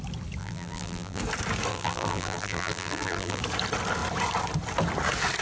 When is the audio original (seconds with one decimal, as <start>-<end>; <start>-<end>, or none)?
0.0-0.4; 1.2-1.7; 3.4-5.4